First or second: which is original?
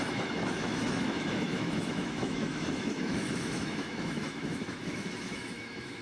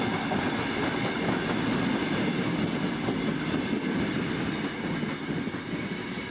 second